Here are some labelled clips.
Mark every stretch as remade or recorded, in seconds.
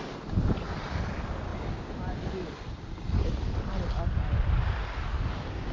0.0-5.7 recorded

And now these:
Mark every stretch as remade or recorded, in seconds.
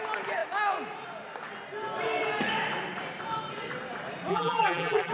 0.0-4.3 recorded; 4.3-5.1 remade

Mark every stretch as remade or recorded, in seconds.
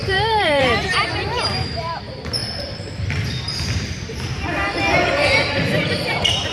0.0-6.5 remade